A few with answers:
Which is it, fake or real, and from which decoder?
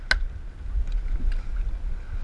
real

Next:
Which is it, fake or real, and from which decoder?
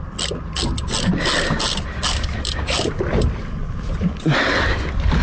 real